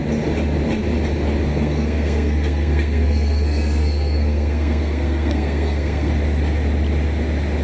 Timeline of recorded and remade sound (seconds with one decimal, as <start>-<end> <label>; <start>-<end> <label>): 0.0-1.5 recorded; 1.5-6.1 remade; 6.1-7.6 recorded